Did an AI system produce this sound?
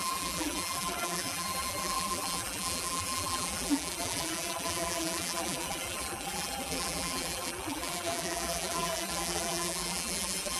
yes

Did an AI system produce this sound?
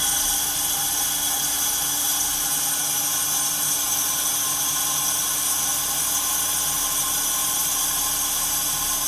no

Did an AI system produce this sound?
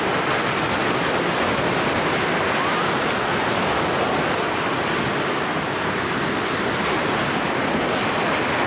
no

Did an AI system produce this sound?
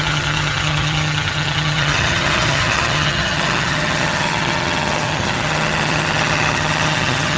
yes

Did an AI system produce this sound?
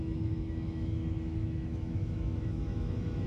yes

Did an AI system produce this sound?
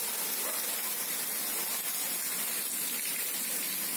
no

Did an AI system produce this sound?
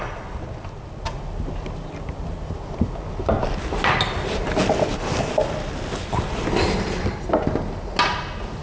no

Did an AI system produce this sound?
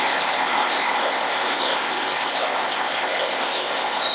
yes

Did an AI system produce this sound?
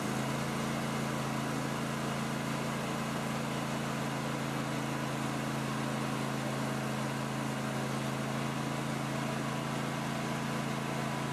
no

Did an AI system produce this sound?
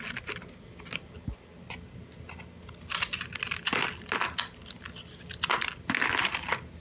no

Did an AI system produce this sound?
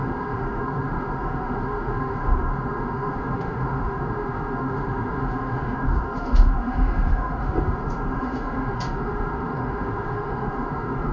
yes